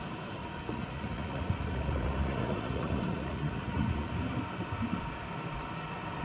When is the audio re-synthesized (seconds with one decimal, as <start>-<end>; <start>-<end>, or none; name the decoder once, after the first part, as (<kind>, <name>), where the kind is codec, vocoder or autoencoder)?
0.4-4.1 (vocoder, Vocos)